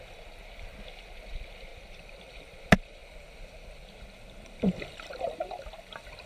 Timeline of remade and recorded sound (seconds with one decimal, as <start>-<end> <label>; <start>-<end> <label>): 0.0-1.7 recorded; 1.7-2.6 remade; 2.6-6.3 recorded